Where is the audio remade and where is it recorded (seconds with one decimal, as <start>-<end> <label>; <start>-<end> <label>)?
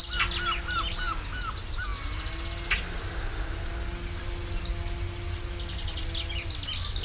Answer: 0.0-7.0 recorded